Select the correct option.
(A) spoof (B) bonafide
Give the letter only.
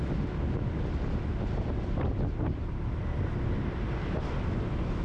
B